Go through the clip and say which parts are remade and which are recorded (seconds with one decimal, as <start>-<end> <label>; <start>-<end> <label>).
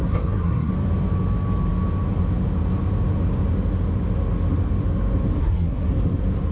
0.0-0.7 remade; 0.7-5.4 recorded; 5.4-5.9 remade; 5.9-6.5 recorded